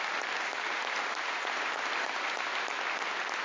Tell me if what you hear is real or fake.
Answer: real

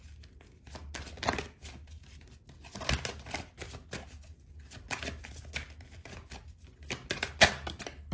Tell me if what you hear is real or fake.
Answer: real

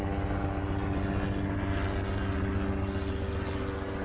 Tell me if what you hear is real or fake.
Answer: real